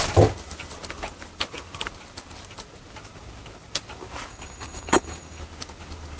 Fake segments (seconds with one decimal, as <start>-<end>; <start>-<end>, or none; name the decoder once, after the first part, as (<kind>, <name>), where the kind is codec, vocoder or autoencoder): 4.3-5.4 (codec, DAC)